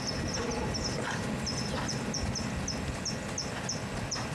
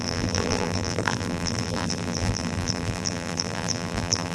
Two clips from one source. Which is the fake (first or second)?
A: second